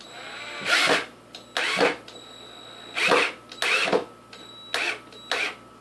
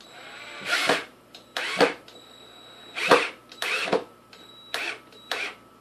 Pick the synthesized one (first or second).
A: second